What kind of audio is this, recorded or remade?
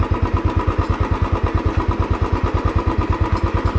recorded